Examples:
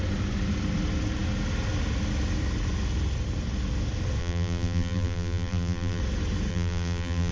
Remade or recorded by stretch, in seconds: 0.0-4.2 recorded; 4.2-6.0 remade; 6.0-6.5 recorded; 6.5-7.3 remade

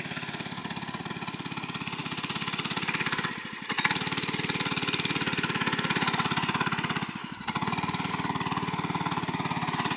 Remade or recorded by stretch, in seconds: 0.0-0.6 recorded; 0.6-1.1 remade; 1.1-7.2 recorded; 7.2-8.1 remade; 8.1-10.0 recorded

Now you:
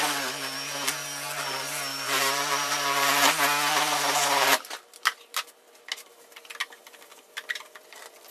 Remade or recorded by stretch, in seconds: 0.0-1.9 recorded; 1.9-3.4 remade; 3.4-8.3 recorded

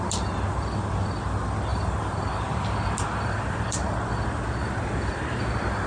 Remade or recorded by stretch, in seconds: 0.0-1.7 recorded; 1.7-3.6 remade; 3.6-4.6 recorded; 4.6-5.9 remade